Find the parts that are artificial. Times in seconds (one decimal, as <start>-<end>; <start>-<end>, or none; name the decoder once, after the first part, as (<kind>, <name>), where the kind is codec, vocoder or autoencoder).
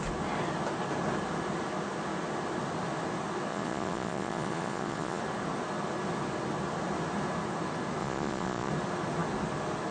3.5-5.2 (vocoder, Vocos); 8.0-8.7